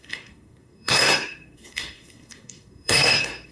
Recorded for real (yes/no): no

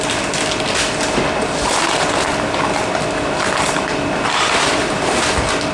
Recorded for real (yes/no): yes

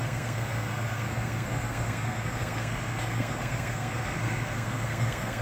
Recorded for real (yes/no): no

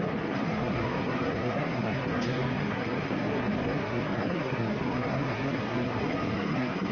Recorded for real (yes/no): no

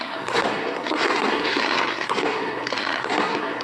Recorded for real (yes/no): no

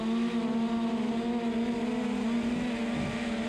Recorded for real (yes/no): yes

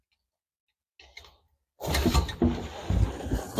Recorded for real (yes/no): yes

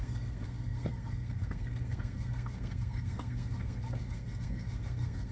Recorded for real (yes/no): no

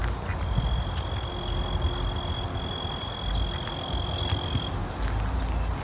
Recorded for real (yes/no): yes